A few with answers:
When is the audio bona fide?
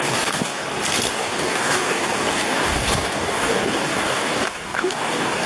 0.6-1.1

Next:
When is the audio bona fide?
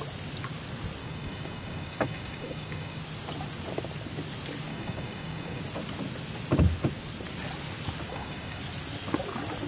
0.0-1.0; 3.0-4.7; 5.6-8.1; 8.6-9.7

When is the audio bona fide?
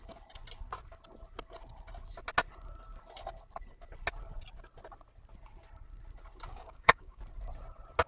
0.0-6.5; 7.2-8.1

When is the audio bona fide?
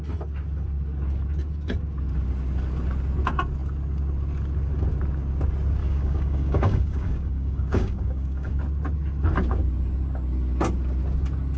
0.0-5.8; 8.6-11.6